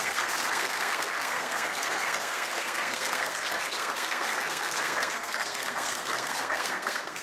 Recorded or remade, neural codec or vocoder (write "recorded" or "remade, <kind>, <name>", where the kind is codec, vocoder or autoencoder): remade, codec, SNAC